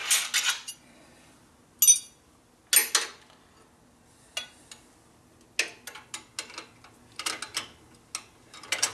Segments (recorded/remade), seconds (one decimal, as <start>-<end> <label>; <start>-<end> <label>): 0.0-8.9 recorded